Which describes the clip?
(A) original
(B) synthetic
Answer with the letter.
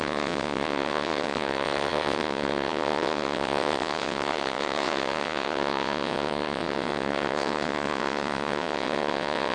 B